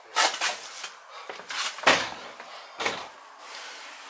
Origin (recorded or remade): recorded